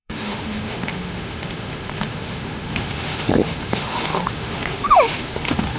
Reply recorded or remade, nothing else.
remade